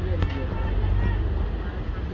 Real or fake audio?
real